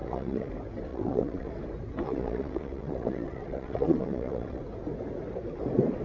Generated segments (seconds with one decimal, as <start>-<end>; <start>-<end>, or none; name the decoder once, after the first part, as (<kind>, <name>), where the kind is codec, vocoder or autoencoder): 0.0-0.5 (vocoder, WaveNeXt); 0.9-1.5; 1.9-4.6

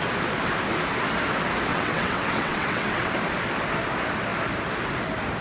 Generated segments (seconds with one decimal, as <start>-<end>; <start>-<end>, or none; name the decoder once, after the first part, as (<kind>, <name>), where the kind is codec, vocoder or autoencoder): 1.7-3.1 (vocoder, WaveNeXt)

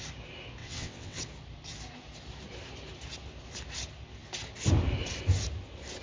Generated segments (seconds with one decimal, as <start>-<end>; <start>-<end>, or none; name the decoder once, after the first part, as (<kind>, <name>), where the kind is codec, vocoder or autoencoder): 0.6-1.2 (vocoder, WaveNeXt)

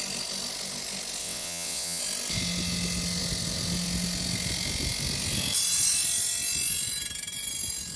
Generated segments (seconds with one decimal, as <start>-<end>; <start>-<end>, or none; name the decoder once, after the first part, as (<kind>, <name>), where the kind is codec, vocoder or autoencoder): 1.2-2.0 (vocoder, WaveNeXt)

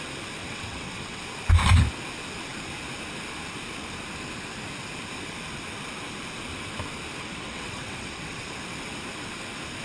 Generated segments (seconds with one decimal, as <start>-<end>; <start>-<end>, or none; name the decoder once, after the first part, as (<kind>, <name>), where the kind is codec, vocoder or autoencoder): 0.4-1.2 (vocoder, WaveNeXt); 7.2-8.4

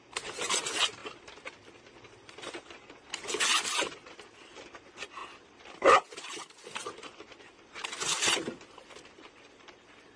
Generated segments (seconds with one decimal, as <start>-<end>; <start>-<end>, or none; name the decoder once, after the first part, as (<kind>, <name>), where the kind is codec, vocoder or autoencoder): none